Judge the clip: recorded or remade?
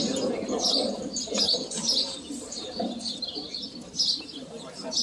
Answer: recorded